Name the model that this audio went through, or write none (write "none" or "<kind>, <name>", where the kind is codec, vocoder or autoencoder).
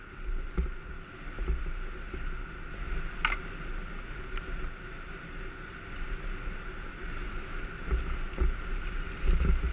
none